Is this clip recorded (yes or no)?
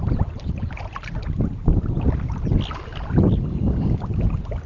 yes